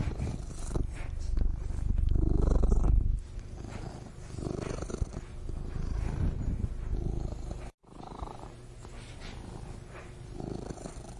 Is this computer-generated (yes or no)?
no